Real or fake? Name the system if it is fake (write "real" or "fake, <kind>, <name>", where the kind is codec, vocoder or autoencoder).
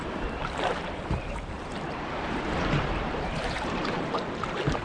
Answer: fake, vocoder, BigVGAN v2